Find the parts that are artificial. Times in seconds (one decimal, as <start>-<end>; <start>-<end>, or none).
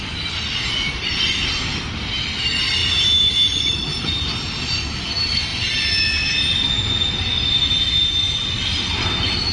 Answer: none